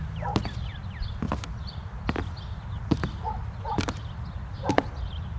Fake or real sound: real